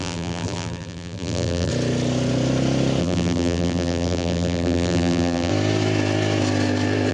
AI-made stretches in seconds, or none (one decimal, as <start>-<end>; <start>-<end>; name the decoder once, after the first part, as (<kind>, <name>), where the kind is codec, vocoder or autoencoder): 0.0-1.7 (vocoder, BigVGAN v2); 3.0-5.5